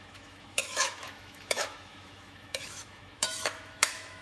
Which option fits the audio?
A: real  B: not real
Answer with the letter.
B